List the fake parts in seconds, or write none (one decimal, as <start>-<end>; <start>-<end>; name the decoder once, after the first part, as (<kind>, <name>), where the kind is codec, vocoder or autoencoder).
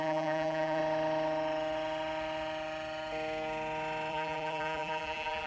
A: 0.0-0.8 (vocoder, BigVGAN v2); 4.1-5.5